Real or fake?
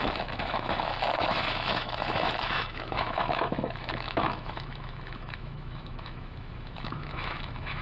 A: fake